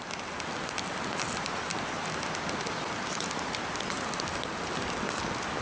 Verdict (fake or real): real